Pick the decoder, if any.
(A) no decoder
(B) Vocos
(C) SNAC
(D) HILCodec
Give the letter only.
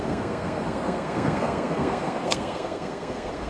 C